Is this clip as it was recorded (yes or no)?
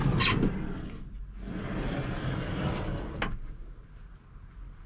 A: yes